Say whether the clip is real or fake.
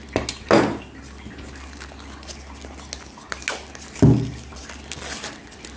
real